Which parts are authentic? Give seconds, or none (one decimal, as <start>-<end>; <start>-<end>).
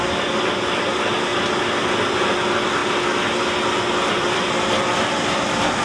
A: 0.0-5.8